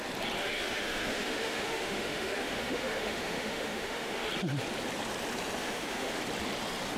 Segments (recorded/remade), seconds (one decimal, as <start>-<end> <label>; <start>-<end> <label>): 0.0-0.4 recorded; 0.4-4.3 remade; 4.3-5.6 recorded; 5.6-6.2 remade; 6.2-7.0 recorded